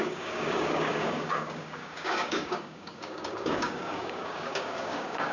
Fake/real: fake